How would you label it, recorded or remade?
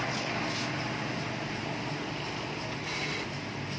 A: recorded